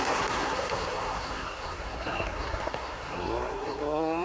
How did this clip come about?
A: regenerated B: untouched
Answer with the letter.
A